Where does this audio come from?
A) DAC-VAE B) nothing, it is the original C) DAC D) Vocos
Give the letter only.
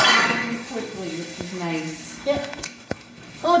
A